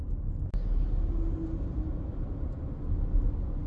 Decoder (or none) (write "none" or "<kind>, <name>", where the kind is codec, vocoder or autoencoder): none